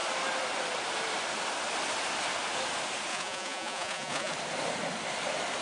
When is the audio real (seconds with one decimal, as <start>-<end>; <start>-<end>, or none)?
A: 0.0-3.1; 4.3-5.6